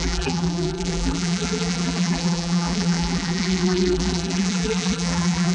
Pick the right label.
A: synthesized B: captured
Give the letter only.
A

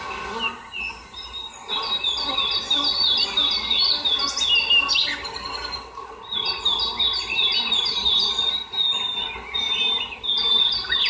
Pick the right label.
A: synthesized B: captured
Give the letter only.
B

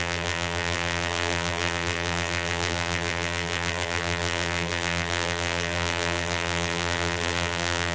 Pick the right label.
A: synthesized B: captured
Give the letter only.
A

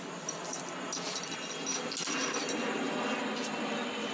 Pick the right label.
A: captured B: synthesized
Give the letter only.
A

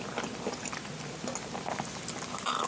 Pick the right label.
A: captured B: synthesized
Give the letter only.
A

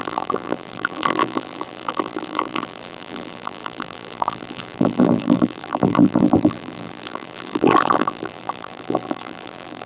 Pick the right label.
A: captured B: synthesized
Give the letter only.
B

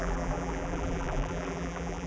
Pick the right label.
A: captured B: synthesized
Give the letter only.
B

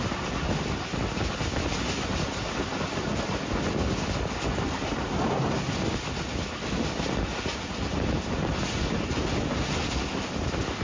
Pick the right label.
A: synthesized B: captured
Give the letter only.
B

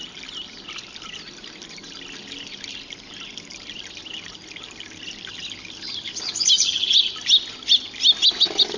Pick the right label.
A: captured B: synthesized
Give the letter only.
A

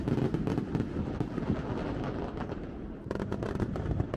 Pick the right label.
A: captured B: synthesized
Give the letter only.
B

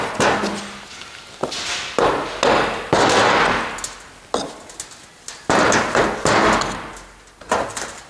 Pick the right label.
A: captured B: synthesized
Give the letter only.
A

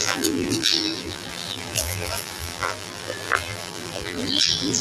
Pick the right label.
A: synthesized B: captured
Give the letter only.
A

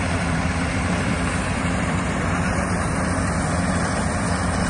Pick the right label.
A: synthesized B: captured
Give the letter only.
A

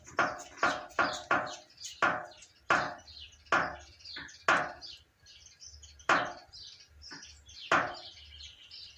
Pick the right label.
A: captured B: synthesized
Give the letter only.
A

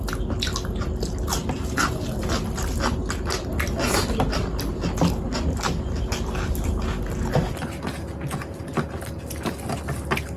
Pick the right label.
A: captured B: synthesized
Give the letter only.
A